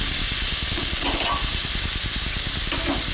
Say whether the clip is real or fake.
real